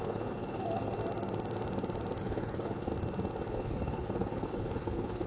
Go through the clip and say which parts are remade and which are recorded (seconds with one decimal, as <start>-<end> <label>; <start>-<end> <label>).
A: 0.0-1.0 remade; 1.0-2.2 recorded; 2.2-2.9 remade; 2.9-3.5 recorded; 3.5-5.3 remade